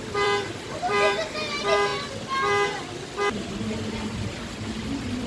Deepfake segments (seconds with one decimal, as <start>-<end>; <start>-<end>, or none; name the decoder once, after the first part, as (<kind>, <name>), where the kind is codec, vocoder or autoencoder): 0.0-1.9 (vocoder, BigVGAN v2); 3.9-5.3